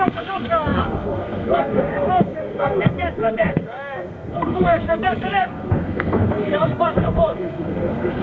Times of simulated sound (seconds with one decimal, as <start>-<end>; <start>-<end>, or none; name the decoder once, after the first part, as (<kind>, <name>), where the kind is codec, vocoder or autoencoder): 0.0-8.2 (codec, SNAC)